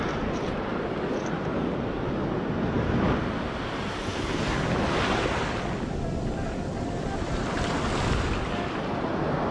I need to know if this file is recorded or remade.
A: recorded